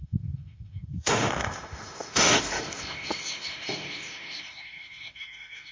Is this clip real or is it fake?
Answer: fake